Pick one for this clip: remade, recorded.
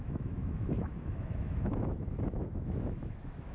remade